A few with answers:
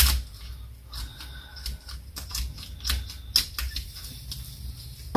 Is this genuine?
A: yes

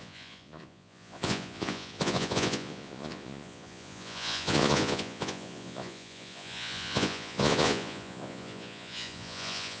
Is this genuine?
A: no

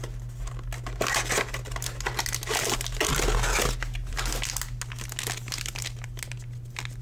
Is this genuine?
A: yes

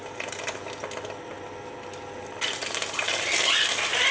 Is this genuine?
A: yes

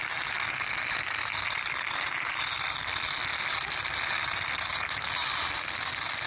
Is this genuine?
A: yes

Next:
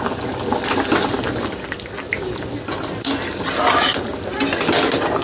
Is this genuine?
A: yes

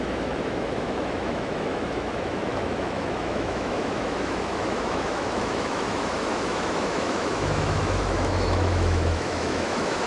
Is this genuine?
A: no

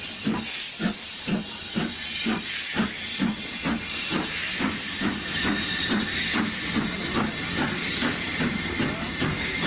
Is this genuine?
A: yes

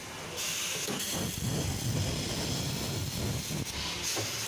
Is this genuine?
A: yes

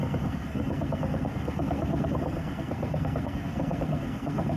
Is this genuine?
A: no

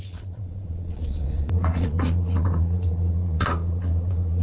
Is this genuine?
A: no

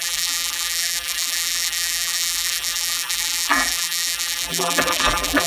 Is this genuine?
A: no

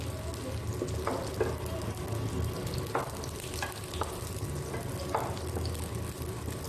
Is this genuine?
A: yes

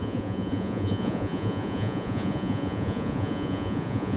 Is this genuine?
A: no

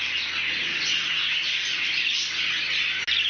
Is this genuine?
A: yes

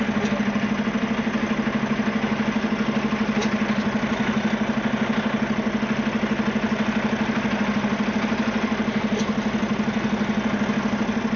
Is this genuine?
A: yes